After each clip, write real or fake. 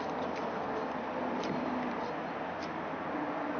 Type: real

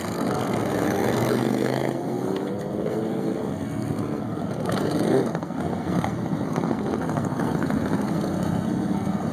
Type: fake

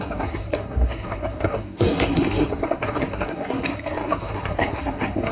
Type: fake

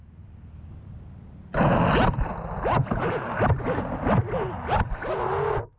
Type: real